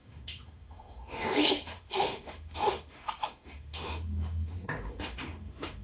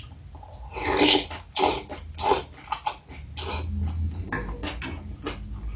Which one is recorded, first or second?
second